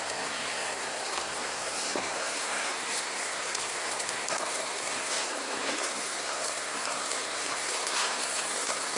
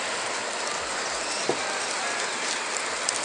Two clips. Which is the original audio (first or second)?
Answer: second